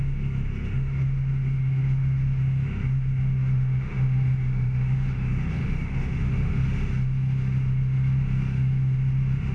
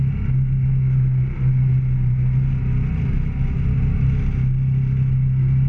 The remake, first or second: first